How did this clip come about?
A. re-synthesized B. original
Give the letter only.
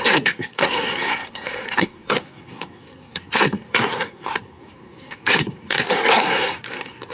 A